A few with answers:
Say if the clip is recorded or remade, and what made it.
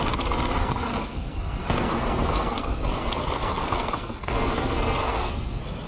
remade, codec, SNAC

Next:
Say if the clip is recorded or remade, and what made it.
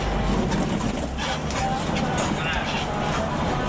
recorded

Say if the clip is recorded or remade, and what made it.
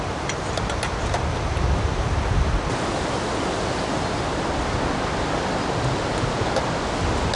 recorded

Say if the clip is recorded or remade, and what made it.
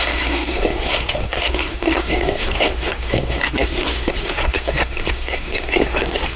remade, codec, SNAC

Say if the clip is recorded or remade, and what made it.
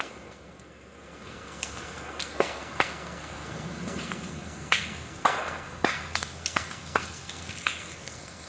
remade, codec, SNAC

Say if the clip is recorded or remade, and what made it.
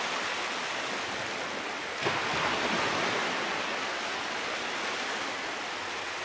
recorded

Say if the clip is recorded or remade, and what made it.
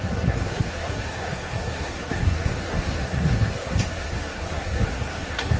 remade, codec, SNAC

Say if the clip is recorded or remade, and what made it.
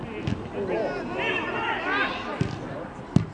recorded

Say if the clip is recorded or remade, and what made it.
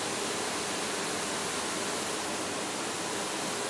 recorded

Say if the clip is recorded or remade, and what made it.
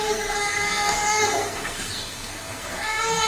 remade, codec, SNAC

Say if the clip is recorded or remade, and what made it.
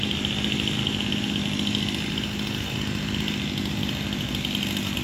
recorded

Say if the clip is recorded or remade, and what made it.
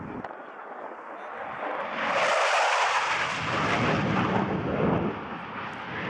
recorded